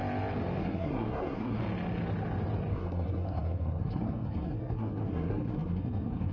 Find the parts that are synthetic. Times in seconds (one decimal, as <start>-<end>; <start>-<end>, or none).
0.6-1.6; 2.7-6.3